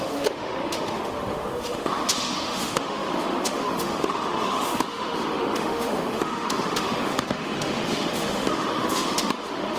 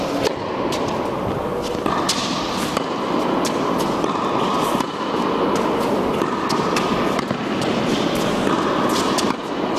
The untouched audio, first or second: second